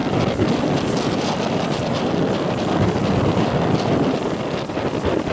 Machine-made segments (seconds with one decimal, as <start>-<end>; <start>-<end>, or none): none